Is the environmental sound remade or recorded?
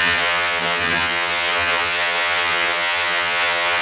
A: remade